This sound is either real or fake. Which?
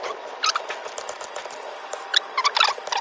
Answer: real